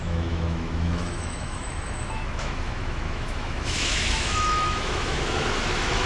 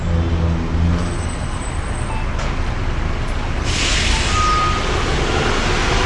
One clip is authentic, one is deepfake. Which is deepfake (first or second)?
first